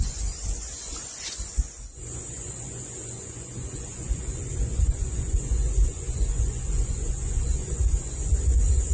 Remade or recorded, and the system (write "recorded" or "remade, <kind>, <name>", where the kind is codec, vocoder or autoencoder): remade, vocoder, Vocos